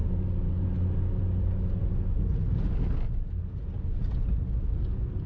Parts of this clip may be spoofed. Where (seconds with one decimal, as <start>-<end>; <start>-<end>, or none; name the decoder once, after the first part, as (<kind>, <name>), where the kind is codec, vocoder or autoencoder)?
none

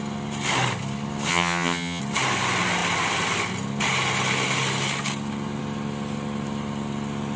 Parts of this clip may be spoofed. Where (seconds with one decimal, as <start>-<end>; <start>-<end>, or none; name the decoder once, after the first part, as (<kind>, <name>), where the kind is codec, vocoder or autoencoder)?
1.3-2.0 (vocoder, HiFi-GAN)

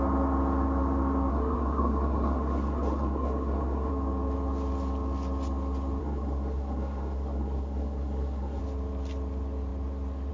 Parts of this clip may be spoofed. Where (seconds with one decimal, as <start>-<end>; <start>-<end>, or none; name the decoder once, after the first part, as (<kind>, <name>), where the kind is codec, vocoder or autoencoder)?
1.3-3.9 (codec, SNAC); 6.0-8.6

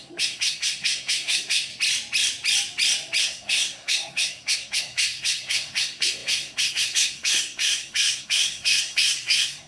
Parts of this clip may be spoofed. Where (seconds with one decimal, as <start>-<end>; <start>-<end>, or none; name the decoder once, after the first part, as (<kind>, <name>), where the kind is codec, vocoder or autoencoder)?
0.0-1.7 (codec, SNAC); 3.2-9.7

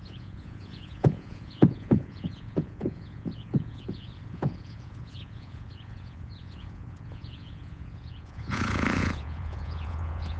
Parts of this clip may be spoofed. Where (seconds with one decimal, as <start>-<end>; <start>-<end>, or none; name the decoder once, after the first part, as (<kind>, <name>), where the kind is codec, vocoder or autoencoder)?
0.0-10.4 (vocoder, Vocos)

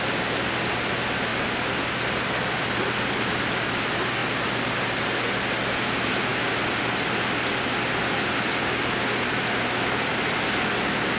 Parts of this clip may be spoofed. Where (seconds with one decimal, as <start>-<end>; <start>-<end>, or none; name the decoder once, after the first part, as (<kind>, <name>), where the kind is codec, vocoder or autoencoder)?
none

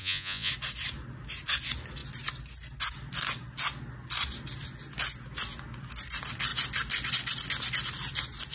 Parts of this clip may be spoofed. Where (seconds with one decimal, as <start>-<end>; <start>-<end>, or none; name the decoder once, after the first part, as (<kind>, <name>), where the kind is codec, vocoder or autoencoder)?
0.0-0.5 (vocoder, Vocos)

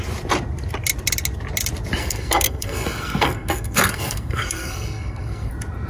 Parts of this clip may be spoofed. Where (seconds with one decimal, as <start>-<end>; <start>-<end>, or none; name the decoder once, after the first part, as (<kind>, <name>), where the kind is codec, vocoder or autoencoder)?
2.0-5.5 (codec, SNAC)